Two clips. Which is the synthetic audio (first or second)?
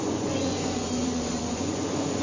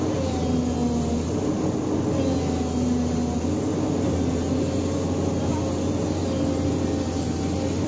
first